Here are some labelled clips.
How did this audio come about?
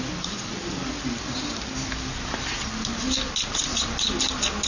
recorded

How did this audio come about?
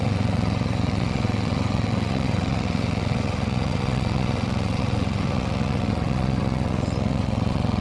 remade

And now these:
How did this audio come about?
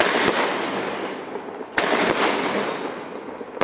recorded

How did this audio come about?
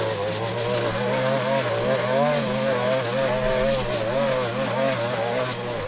recorded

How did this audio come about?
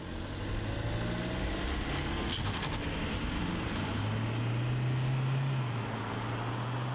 recorded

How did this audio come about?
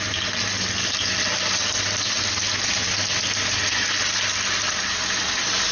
recorded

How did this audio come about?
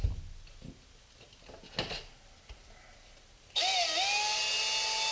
recorded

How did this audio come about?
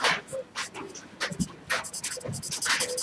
recorded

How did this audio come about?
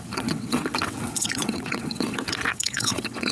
remade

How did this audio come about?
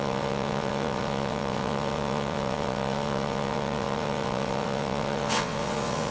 remade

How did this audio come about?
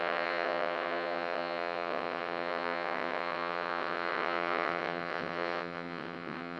remade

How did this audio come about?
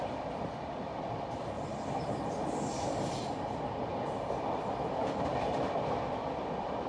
recorded